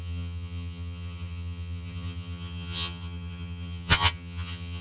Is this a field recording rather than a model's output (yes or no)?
no